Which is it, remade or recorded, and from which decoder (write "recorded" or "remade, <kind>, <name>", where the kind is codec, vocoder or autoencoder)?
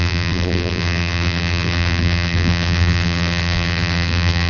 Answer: remade, vocoder, BigVGAN v2